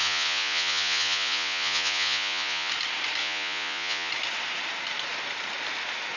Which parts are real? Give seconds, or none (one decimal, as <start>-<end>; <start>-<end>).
2.7-3.2; 4.1-6.2